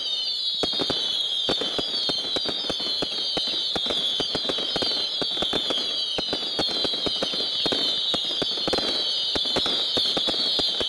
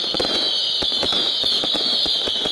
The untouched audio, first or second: first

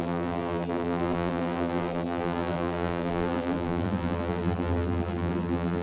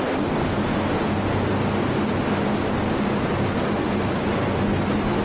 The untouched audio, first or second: second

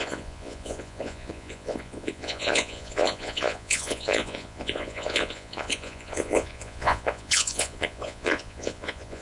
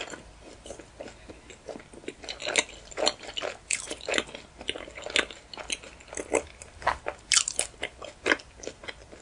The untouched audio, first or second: second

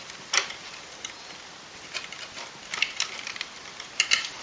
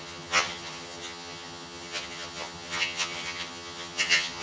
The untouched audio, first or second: first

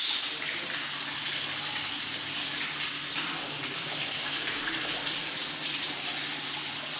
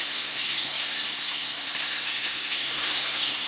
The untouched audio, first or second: first